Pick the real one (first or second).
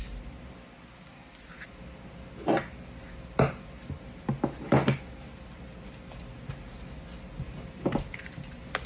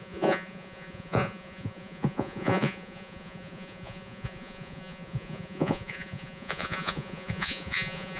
first